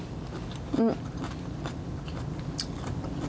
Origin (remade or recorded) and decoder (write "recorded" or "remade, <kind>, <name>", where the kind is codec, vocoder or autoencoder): recorded